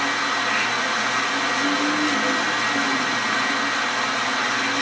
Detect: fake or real real